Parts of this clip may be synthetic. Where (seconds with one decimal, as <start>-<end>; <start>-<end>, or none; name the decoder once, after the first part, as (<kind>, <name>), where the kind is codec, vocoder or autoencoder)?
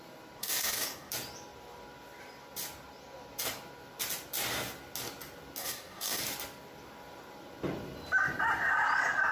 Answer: 0.4-1.1 (codec, DAC); 5.6-6.2